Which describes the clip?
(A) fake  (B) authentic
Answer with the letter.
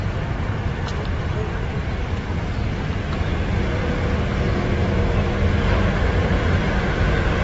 B